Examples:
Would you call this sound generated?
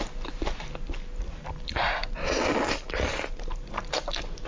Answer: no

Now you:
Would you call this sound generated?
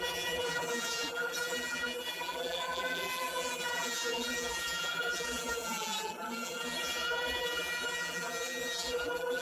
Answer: yes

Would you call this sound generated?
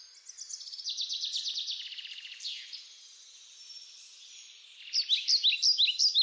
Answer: no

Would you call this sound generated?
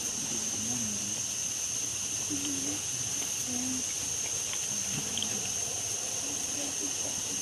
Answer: no